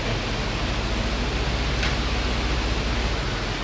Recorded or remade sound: recorded